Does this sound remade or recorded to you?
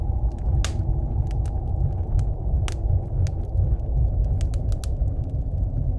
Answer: recorded